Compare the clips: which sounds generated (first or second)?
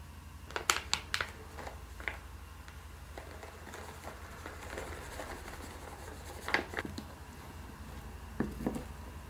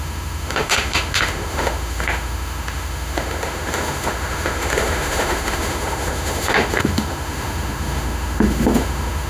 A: second